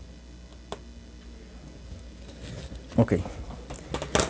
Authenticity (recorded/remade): recorded